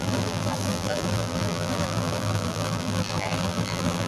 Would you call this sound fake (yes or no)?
yes